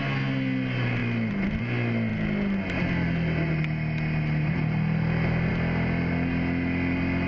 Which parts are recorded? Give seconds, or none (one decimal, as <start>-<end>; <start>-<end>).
0.0-7.3